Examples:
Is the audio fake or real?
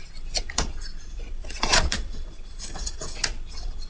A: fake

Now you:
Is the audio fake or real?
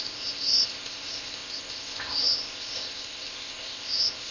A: fake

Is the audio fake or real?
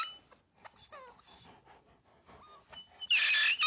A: real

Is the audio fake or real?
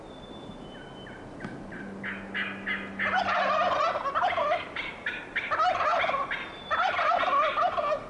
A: real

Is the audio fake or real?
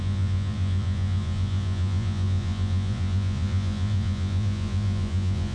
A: fake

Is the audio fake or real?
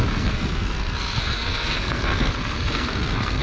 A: fake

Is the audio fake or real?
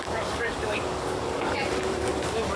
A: fake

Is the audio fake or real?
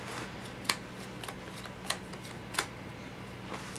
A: real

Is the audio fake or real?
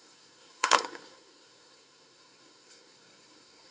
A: fake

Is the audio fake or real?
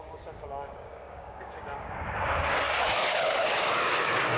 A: fake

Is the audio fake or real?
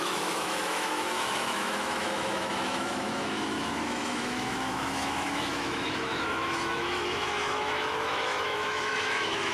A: fake